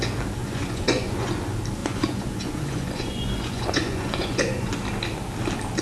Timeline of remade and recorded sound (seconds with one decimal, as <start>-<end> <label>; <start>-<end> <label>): 0.0-0.4 recorded; 0.4-1.3 remade; 1.3-1.8 recorded; 1.8-4.7 remade; 4.7-5.8 recorded